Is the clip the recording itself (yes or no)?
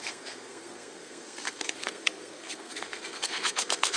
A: no